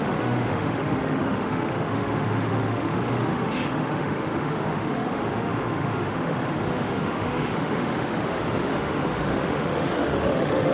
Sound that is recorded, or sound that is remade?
remade